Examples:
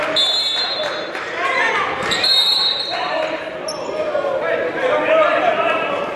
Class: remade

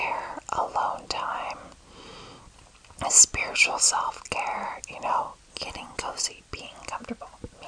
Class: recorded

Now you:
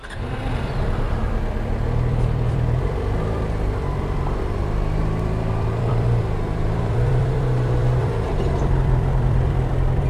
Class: remade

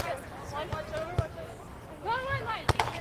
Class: recorded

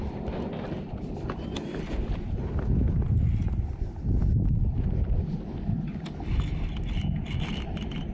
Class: recorded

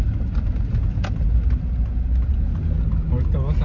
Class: recorded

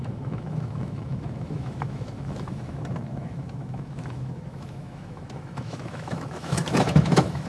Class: remade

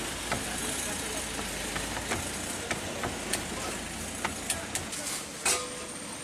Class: recorded